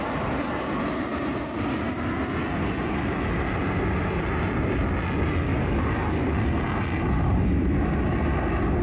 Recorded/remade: recorded